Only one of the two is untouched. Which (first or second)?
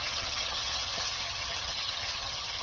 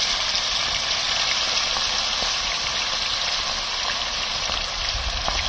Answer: second